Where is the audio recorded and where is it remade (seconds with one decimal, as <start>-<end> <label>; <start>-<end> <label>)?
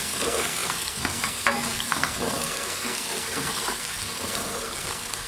0.0-5.3 remade